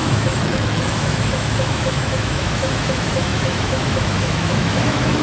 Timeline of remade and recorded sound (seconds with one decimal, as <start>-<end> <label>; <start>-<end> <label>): 0.0-5.2 remade